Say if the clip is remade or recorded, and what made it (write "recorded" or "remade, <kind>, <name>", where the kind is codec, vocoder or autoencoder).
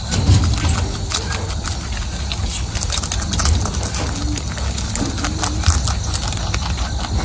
recorded